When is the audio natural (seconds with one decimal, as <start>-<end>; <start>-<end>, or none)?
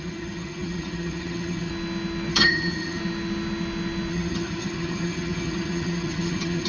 1.7-2.3; 3.0-4.1